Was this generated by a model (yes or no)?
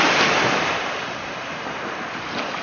no